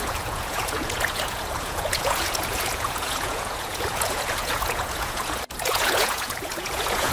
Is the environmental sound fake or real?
fake